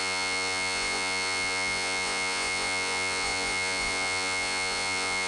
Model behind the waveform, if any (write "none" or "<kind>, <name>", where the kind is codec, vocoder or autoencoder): vocoder, Vocos